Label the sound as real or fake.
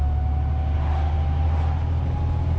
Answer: real